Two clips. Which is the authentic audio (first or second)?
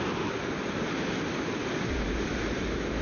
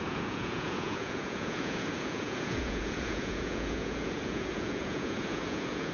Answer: first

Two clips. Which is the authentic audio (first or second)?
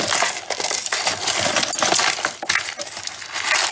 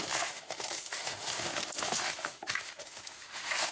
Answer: first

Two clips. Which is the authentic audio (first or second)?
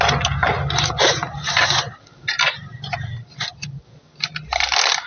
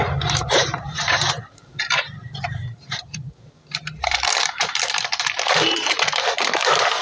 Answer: first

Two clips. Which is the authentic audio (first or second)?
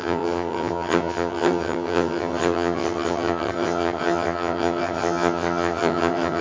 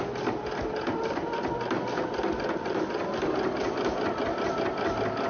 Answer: second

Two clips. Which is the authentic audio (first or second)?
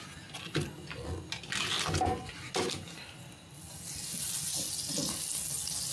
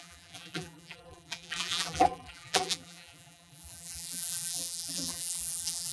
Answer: first